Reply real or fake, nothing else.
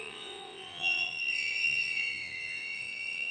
fake